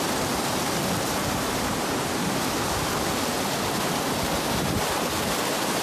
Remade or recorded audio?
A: recorded